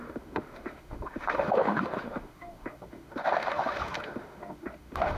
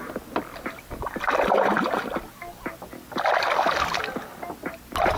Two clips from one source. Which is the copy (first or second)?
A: first